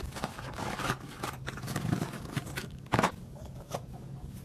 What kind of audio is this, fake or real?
fake